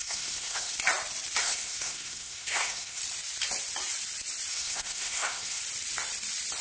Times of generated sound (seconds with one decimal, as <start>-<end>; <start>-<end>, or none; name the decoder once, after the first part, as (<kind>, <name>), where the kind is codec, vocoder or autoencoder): 0.0-0.7 (codec, SNAC); 1.4-3.0; 4.5-5.6